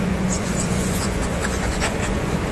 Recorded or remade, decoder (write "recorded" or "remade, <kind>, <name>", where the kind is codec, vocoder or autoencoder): remade, vocoder, Vocos